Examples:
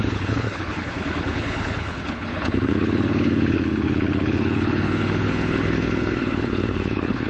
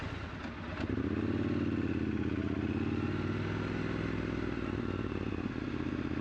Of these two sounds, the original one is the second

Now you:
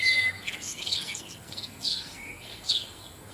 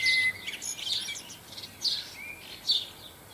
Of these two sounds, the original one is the second